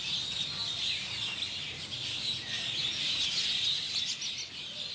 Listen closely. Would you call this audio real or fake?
real